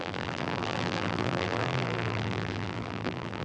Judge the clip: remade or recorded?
remade